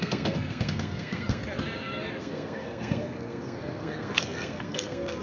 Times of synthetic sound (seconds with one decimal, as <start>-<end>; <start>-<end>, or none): 0.0-1.4; 2.2-5.2